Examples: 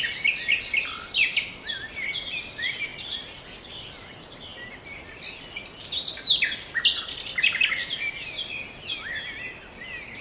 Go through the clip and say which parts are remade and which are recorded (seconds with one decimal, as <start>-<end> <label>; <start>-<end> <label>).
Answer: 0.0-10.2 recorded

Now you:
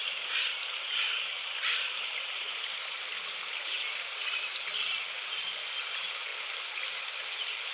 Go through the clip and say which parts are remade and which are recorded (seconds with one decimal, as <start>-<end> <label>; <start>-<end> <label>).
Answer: 0.0-7.7 recorded

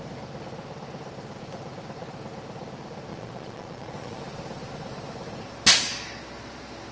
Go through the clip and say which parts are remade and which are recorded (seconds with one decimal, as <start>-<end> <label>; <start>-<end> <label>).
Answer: 0.0-3.1 recorded; 3.1-4.2 remade; 4.2-6.9 recorded

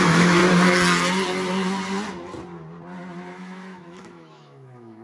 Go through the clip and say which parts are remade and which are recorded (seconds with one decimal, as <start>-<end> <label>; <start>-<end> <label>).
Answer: 0.0-0.4 remade; 0.4-3.4 recorded; 3.4-5.0 remade

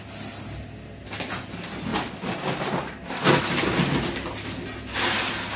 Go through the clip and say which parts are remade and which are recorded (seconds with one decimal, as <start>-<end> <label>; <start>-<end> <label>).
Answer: 0.0-5.6 recorded

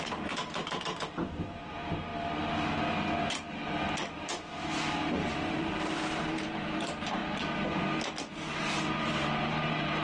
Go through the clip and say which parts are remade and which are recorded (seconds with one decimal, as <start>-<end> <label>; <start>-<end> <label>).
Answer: 0.0-2.1 remade; 2.1-3.3 recorded; 3.3-7.2 remade; 7.2-8.3 recorded; 8.3-10.0 remade